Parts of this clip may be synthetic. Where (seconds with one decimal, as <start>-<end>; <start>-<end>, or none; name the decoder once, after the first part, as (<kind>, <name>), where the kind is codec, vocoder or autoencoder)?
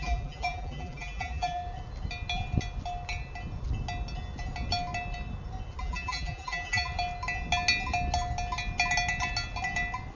0.0-1.6 (vocoder, BigVGAN v2); 5.8-6.9